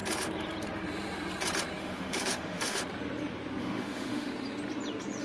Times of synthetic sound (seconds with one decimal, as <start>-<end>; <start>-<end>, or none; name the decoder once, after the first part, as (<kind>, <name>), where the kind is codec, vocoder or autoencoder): 1.8-2.8 (autoencoder, DAC-VAE); 3.6-4.3